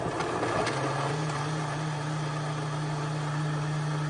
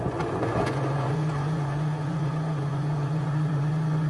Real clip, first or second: first